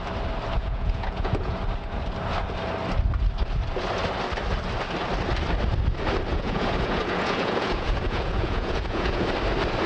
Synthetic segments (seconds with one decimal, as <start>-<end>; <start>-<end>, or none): 0.6-1.6; 6.3-9.3